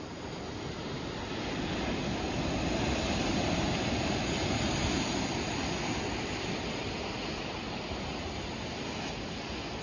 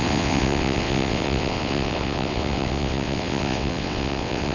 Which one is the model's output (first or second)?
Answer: second